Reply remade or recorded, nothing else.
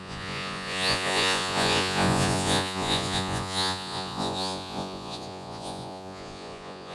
remade